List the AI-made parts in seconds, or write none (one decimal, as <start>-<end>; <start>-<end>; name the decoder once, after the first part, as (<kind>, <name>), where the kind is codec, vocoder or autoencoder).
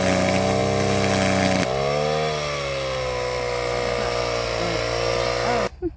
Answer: none